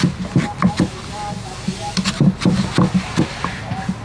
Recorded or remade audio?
recorded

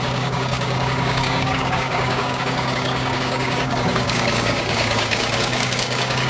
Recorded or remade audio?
remade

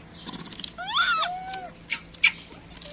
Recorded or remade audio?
recorded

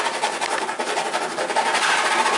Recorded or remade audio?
recorded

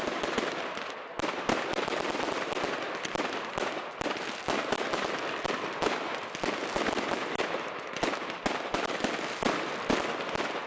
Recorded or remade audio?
recorded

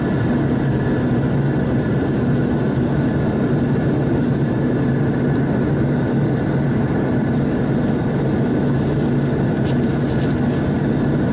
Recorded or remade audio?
recorded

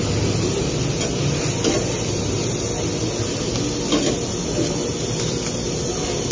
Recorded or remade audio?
recorded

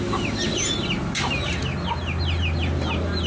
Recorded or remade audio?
recorded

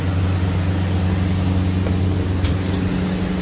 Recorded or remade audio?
recorded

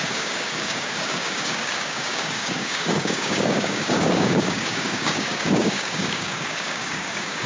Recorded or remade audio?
remade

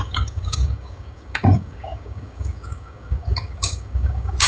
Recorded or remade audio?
remade